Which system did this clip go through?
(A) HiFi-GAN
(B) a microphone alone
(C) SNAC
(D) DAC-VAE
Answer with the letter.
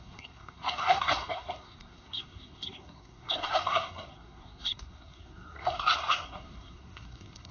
C